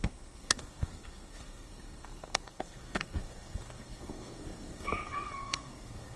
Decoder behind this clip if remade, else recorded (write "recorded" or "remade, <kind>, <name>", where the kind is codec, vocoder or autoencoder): remade, codec, SNAC